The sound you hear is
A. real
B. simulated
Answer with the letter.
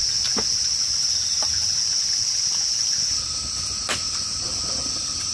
A